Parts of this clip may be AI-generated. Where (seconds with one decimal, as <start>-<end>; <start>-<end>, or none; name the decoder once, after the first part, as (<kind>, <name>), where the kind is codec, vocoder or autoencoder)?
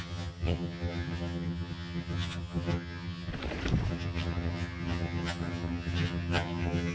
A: 0.0-3.3 (vocoder, HiFi-GAN); 3.9-6.9